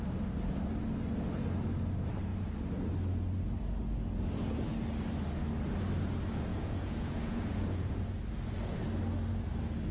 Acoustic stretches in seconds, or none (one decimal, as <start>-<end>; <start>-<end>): 0.0-6.5; 8.0-9.9